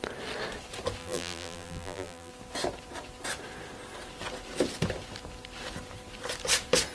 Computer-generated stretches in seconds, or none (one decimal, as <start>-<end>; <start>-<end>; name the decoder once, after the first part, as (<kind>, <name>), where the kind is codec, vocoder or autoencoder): 1.0-2.3 (vocoder, BigVGAN v2)